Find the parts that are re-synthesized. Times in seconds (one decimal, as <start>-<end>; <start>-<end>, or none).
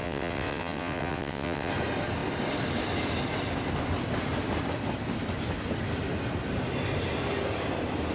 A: 0.0-1.7